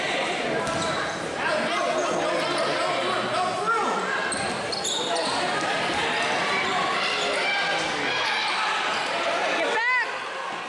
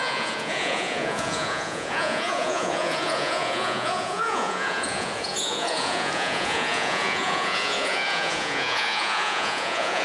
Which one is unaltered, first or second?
first